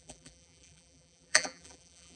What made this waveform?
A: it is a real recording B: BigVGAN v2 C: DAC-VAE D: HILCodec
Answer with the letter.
B